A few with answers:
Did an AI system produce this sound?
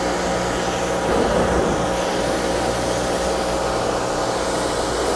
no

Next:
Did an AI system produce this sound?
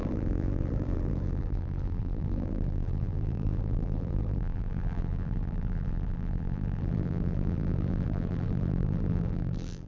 yes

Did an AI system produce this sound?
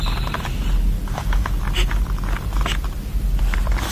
no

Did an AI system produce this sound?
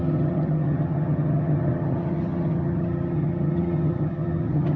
yes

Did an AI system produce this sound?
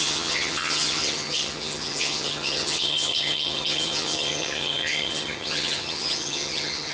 yes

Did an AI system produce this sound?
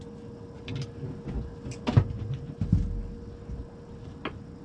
no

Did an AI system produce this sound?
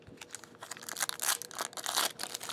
no